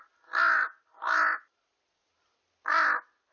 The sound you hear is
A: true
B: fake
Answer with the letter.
A